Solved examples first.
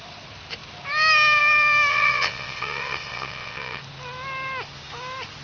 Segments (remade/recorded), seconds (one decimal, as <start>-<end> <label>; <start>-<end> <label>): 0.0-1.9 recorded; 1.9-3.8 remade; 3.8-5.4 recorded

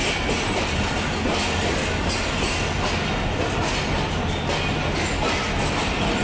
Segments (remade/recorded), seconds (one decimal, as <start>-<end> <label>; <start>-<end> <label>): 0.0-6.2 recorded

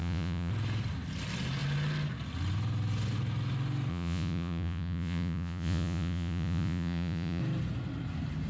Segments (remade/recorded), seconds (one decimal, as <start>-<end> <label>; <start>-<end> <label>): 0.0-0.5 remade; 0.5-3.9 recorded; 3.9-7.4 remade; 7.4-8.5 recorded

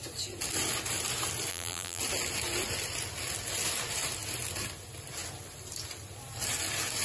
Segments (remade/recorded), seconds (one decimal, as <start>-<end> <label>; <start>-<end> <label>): 0.0-1.5 recorded; 1.5-2.0 remade; 2.0-7.0 recorded